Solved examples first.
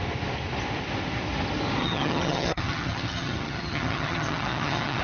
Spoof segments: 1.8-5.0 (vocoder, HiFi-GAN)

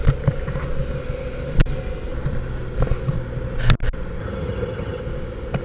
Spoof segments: 4.2-5.0 (vocoder, HiFi-GAN)

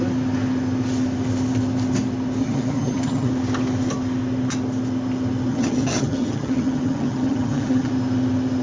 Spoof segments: 2.4-3.3 (vocoder, HiFi-GAN); 5.5-7.9